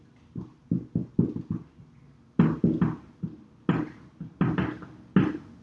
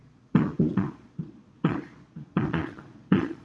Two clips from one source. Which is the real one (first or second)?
first